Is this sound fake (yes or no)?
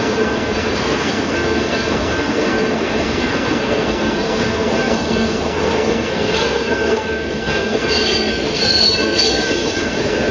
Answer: yes